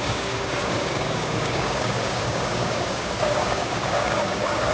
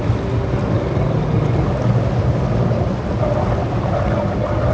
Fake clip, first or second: first